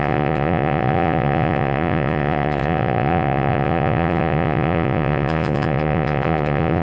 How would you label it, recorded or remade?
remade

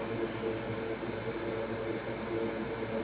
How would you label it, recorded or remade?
recorded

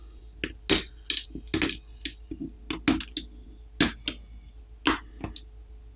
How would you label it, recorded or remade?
recorded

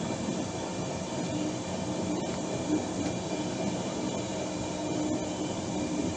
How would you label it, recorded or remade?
recorded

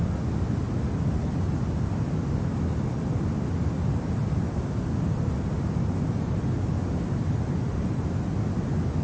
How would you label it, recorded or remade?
recorded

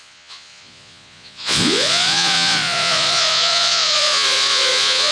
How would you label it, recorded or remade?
remade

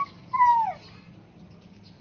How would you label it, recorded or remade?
recorded